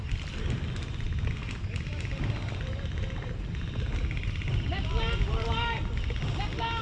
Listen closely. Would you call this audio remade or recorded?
recorded